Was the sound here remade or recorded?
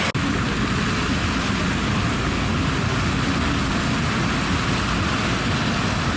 recorded